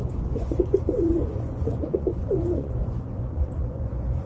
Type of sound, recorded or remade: remade